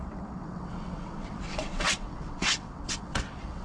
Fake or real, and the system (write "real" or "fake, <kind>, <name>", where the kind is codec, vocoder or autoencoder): fake, vocoder, WaveNeXt